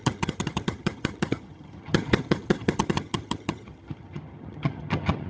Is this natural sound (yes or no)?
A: no